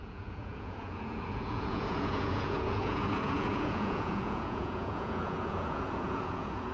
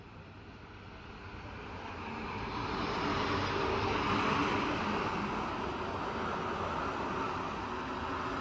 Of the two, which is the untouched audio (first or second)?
second